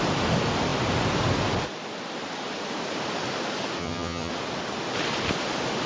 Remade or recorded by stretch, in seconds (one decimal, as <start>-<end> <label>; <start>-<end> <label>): 0.0-3.8 recorded; 3.8-4.3 remade; 4.3-5.9 recorded